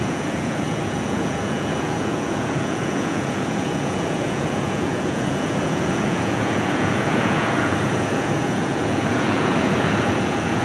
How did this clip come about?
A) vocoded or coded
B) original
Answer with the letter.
A